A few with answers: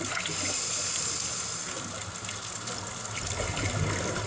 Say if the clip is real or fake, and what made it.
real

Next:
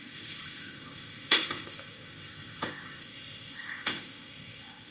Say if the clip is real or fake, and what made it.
fake, codec, ZipCodec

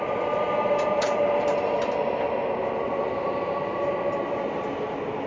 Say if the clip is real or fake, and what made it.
real